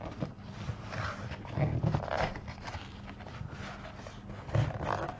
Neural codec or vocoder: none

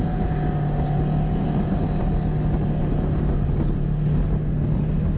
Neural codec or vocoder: none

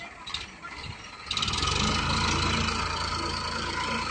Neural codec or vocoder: none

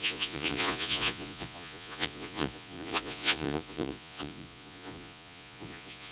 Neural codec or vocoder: vocoder, Vocos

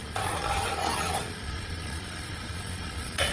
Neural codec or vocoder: vocoder, Vocos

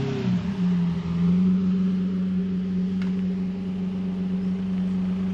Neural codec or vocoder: none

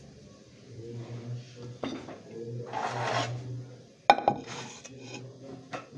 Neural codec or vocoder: none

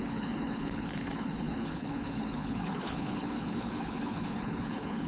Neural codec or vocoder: codec, HILCodec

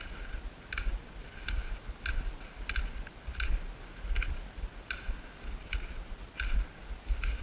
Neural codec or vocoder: none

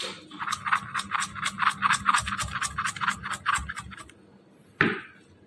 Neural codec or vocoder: none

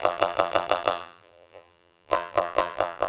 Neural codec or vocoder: vocoder, BigVGAN v2